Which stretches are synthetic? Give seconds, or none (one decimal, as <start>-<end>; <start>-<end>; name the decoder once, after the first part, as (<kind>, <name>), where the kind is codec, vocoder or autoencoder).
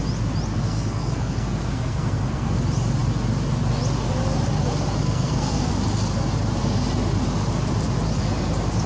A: 0.5-2.6 (codec, SNAC); 5.0-5.7